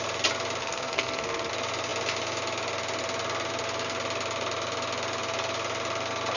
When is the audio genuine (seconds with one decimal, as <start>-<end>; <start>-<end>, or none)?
0.0-0.6; 1.5-6.4